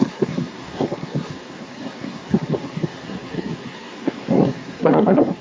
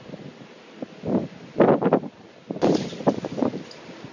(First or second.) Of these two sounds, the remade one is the first